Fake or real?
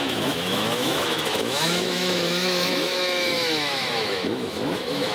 fake